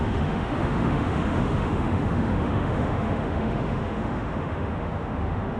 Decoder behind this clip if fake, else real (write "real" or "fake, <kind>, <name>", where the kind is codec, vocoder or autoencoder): fake, autoencoder, DAC-VAE